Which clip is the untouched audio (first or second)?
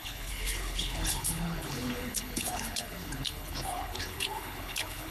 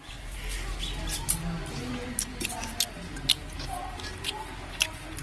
second